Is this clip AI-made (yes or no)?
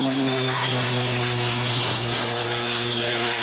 yes